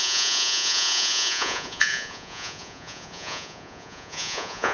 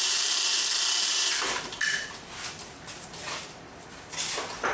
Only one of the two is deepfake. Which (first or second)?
first